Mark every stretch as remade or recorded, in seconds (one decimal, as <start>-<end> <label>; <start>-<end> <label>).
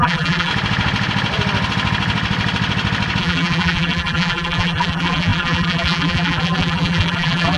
0.0-0.5 remade; 0.5-3.2 recorded; 3.2-7.6 remade